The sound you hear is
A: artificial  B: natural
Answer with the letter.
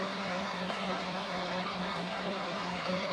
A